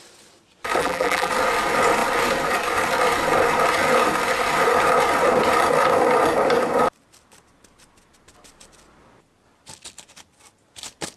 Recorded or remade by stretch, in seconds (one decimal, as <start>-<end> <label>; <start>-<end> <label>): 0.0-0.8 recorded; 0.8-1.3 remade; 1.3-11.2 recorded